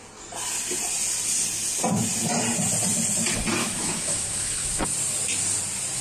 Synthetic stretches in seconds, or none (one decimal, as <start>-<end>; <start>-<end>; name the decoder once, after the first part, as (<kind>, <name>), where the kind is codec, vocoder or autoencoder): 3.6-4.8 (autoencoder, DAC-VAE)